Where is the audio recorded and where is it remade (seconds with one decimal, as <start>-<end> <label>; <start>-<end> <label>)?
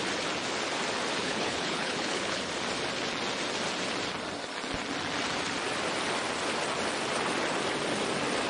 0.0-1.2 recorded; 1.2-2.5 remade; 2.5-8.5 recorded